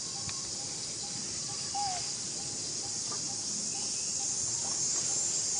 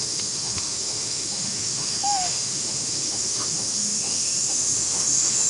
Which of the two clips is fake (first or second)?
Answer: second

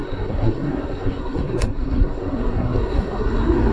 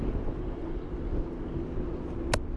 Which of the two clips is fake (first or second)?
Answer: first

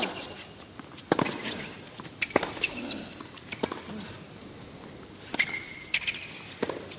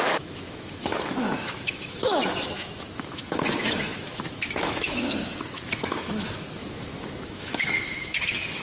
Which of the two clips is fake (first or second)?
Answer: second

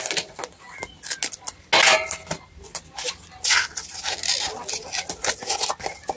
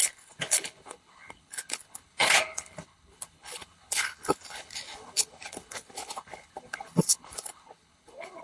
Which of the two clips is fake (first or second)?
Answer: second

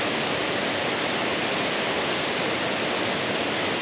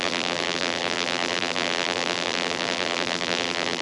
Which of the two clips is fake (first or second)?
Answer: second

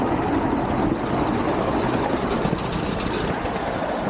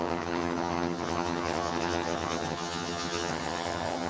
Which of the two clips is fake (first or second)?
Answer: second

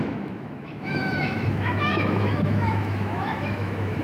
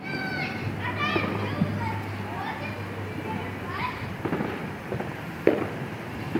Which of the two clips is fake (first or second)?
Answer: first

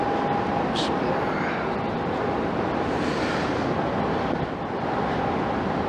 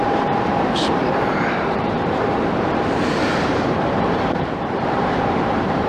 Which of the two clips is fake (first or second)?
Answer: second